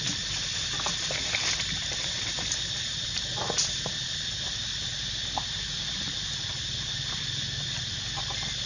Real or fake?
real